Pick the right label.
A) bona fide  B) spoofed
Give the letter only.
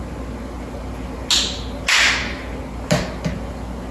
A